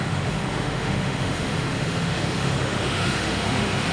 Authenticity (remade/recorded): remade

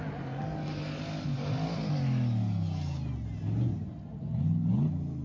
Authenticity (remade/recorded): recorded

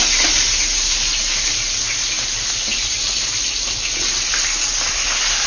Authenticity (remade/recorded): recorded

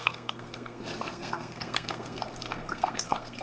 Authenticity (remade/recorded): remade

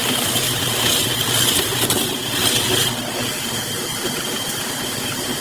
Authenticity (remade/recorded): recorded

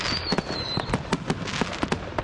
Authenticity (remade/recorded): recorded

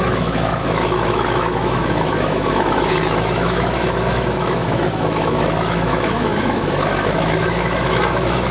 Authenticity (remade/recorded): remade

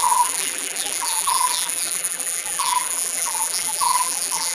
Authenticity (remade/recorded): remade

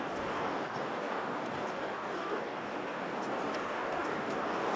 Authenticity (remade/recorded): remade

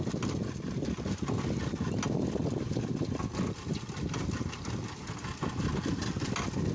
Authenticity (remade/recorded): recorded